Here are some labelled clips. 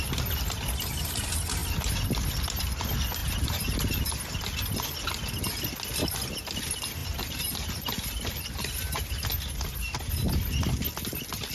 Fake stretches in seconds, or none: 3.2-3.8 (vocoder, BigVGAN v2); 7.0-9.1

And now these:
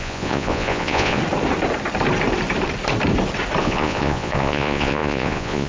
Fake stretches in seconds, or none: 0.0-1.2 (vocoder, Vocos); 3.6-5.7

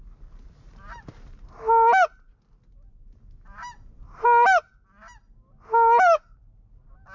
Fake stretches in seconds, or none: none

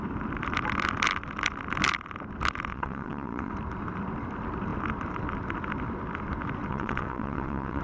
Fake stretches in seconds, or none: 2.7-3.5 (vocoder, WaveNeXt); 6.7-7.8

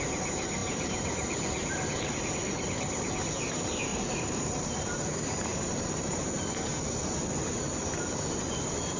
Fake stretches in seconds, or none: 3.9-4.7 (vocoder, BigVGAN v2); 5.5-6.2

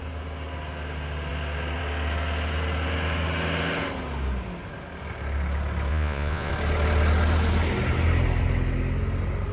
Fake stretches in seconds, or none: 5.9-6.5 (vocoder, Vocos)

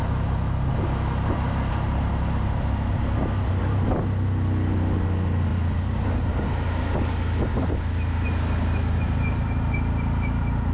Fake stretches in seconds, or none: none